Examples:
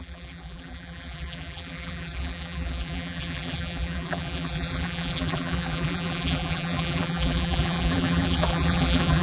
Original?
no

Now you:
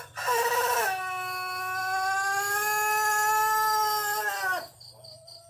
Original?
yes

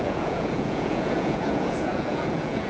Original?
no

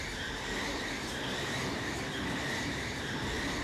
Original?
yes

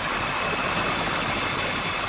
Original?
yes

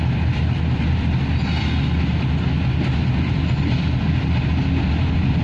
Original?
yes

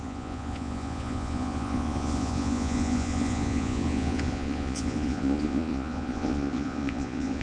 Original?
no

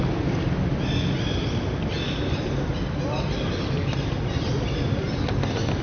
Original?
yes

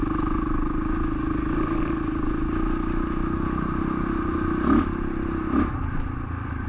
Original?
yes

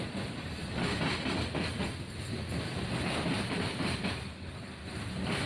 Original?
yes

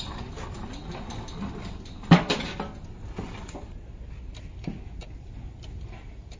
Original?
yes